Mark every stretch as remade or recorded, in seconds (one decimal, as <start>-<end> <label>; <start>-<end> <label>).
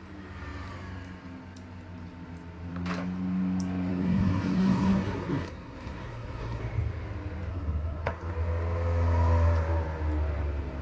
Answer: 0.0-3.9 recorded; 3.9-6.6 remade; 6.6-7.5 recorded; 7.5-8.3 remade; 8.3-10.8 recorded